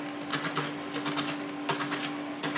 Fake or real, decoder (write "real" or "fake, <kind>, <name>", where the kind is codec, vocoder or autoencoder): real